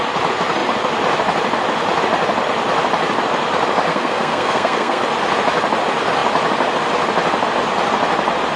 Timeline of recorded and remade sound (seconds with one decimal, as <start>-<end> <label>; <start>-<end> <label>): 0.0-3.9 recorded; 3.9-5.0 remade; 5.0-8.6 recorded